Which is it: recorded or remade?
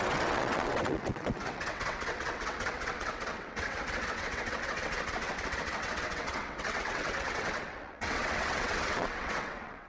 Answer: remade